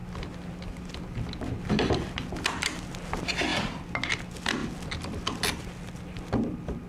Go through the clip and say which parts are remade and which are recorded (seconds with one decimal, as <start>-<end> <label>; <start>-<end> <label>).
0.0-3.5 recorded; 3.5-4.1 remade; 4.1-4.6 recorded; 4.6-5.5 remade; 5.5-6.9 recorded